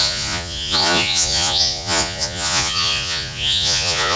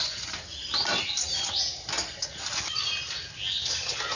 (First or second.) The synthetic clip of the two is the first